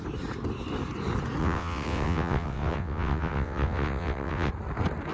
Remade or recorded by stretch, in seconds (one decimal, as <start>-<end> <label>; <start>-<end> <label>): 0.0-1.4 recorded; 1.4-4.5 remade; 4.5-5.1 recorded